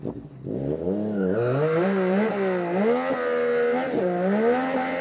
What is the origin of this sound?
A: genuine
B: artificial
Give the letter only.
A